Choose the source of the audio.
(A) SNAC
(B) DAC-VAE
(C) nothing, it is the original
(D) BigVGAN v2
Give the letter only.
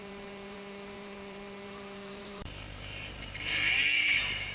D